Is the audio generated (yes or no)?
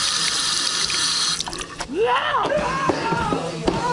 yes